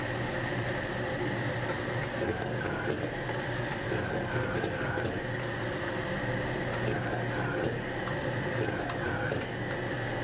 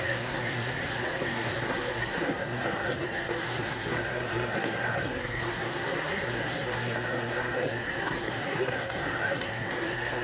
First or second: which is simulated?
second